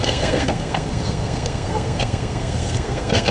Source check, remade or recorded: remade